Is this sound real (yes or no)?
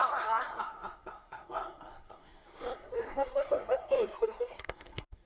no